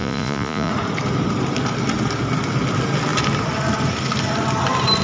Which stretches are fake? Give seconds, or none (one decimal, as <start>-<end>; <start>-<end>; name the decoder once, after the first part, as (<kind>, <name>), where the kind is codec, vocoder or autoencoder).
0.0-0.7 (vocoder, Vocos)